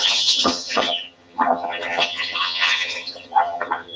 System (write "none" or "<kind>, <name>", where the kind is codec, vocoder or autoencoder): vocoder, HiFi-GAN